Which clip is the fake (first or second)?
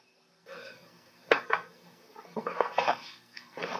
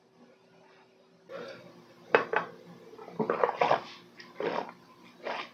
first